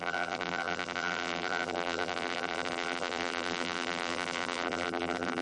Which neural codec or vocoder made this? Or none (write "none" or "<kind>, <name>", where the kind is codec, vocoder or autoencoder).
vocoder, BigVGAN v2